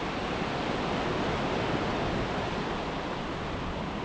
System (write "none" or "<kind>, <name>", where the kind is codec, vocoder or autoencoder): none